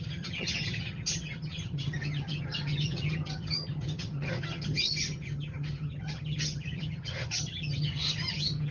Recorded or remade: remade